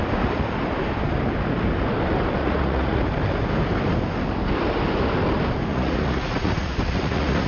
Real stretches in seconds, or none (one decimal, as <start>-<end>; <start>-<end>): 0.0-2.4; 3.0-5.7